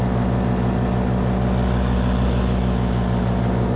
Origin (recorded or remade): recorded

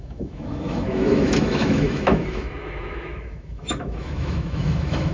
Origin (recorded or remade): remade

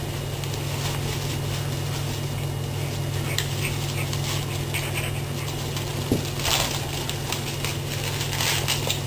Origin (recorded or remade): recorded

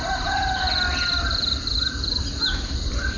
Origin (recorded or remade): recorded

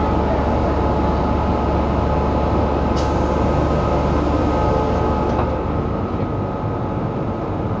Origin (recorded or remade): recorded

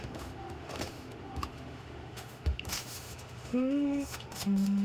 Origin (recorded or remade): remade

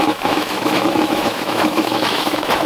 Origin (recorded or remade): remade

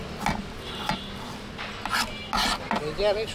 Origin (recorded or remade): recorded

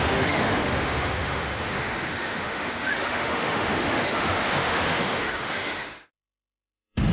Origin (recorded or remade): remade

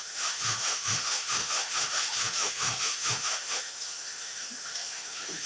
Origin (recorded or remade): remade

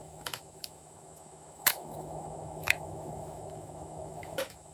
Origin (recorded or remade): remade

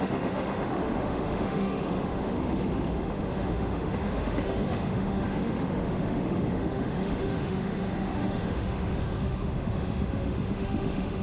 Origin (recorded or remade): remade